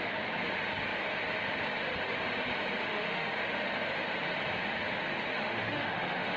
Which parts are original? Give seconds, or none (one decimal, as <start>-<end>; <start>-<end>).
0.0-2.8; 3.7-5.3